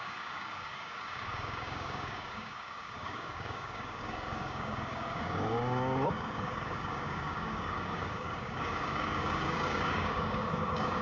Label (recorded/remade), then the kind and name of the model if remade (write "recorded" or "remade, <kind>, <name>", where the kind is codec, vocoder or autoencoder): remade, codec, DAC